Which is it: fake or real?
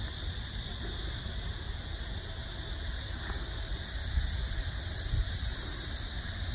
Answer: real